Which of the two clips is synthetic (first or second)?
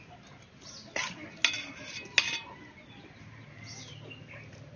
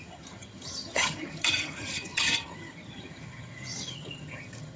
second